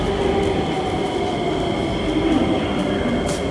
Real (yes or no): yes